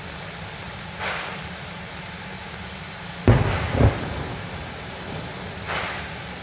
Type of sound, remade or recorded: recorded